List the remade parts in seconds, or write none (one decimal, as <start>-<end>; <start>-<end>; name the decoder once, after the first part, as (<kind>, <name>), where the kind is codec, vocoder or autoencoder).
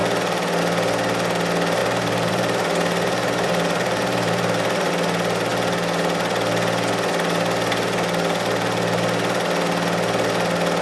1.8-4.9 (vocoder, BigVGAN v2)